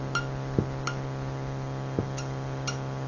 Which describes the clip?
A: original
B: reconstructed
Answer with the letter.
A